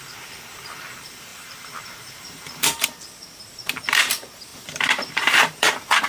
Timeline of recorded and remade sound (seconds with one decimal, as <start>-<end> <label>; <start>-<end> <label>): 0.0-6.1 remade